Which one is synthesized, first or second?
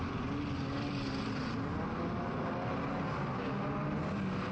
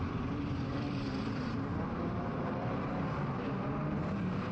second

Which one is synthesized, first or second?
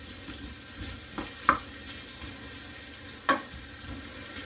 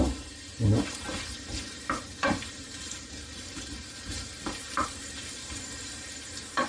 second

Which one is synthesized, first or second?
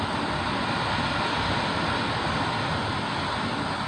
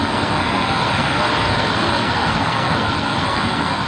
second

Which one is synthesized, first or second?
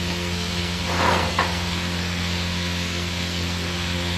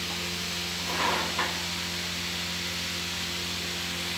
first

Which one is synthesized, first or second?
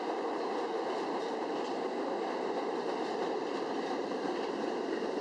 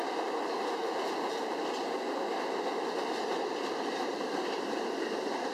first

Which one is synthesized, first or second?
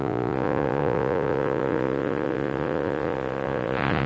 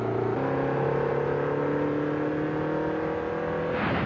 first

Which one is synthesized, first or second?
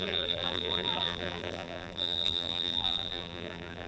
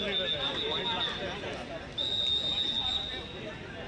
first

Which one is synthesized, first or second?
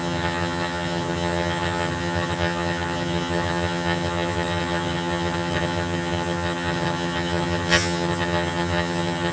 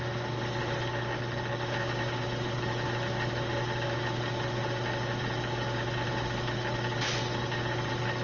first